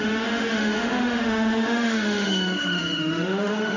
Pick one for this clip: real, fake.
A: fake